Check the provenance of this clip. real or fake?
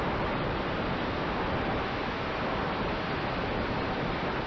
real